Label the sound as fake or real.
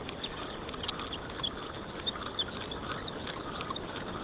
real